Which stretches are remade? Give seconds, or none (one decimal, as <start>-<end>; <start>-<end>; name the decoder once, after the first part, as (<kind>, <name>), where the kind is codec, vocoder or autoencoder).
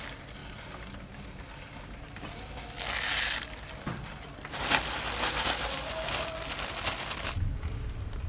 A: none